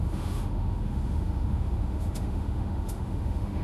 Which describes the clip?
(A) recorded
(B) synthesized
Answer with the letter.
B